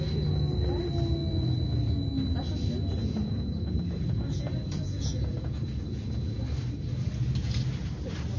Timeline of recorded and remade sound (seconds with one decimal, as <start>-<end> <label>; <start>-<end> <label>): 0.0-3.0 recorded; 3.0-6.4 remade; 6.4-8.4 recorded